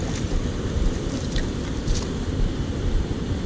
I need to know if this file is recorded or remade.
recorded